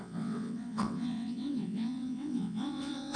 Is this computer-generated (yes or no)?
yes